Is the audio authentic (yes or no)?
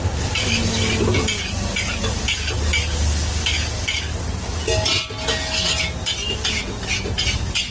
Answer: yes